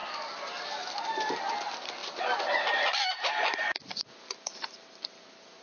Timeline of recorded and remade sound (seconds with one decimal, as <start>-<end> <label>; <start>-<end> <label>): 0.0-5.6 recorded